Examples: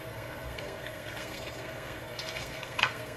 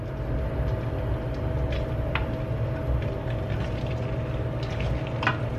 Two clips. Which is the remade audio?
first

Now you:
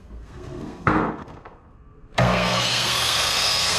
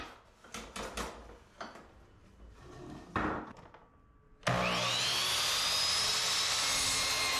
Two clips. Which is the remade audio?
first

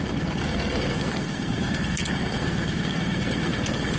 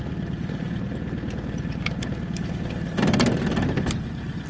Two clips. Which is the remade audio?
first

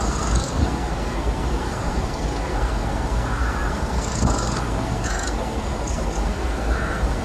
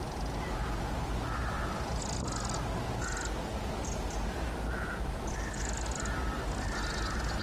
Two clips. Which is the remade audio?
first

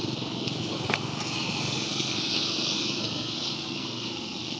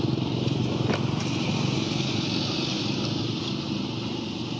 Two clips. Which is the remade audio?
first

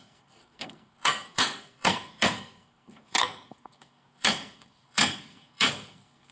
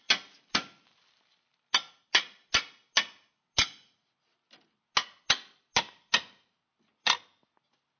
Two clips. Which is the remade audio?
first